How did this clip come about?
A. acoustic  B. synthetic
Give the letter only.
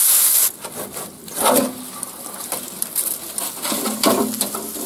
A